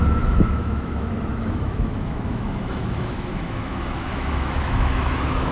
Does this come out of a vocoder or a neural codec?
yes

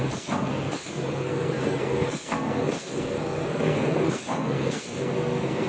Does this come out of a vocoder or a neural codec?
yes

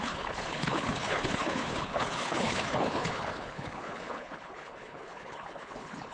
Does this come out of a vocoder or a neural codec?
yes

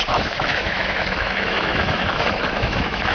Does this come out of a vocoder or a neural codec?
yes